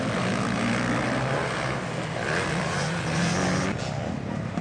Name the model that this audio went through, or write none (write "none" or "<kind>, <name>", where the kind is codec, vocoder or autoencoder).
none